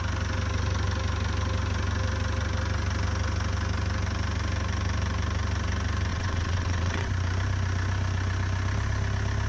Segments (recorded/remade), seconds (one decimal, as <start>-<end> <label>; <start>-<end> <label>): 0.0-6.1 recorded; 6.1-7.1 remade; 7.1-9.5 recorded